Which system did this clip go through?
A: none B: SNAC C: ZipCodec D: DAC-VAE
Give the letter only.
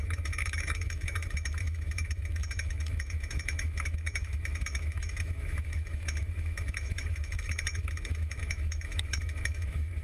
D